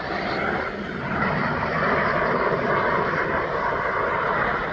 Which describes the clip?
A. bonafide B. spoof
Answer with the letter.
A